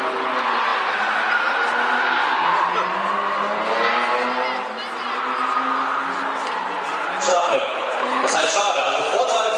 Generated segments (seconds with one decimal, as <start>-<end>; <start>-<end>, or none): 7.3-8.5